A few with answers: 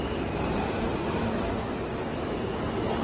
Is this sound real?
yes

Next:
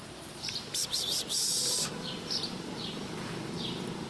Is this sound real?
no